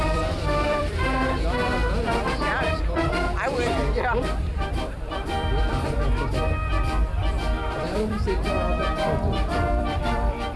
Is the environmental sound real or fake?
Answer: fake